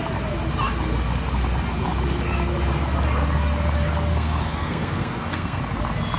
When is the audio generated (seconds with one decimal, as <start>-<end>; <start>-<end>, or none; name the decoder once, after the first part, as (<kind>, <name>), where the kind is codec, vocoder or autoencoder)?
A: 4.1-5.6 (codec, SNAC)